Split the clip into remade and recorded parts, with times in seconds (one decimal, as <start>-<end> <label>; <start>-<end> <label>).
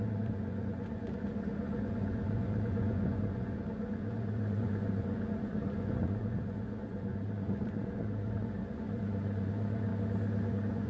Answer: 0.0-9.9 remade; 9.9-10.5 recorded; 10.5-10.9 remade